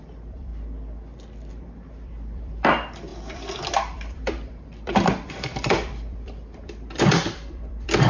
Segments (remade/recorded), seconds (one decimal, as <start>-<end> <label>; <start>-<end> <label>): 0.0-0.5 remade; 0.5-1.5 recorded; 1.5-8.1 remade